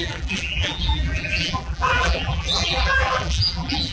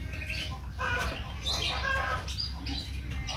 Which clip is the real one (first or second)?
second